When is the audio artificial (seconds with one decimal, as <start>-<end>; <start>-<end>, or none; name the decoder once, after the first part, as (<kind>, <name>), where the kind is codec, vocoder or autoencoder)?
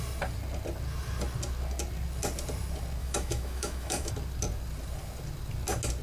3.0-4.1 (autoencoder, DAC-VAE)